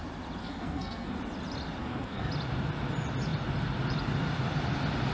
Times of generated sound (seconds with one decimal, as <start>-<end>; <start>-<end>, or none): 0.4-1.2; 1.8-2.3